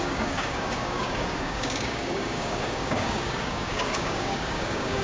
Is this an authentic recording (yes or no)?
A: no